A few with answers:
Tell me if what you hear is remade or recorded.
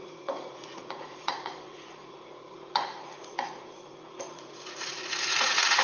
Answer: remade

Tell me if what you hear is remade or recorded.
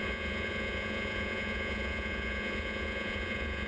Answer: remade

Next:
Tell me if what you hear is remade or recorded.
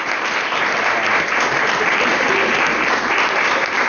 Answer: recorded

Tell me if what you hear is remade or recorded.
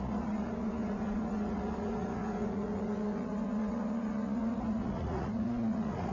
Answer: remade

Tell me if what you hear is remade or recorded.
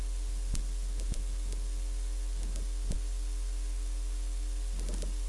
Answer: recorded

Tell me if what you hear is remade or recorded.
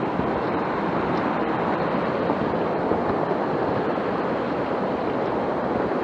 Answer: recorded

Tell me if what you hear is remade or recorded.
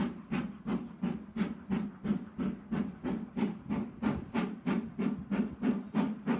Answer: recorded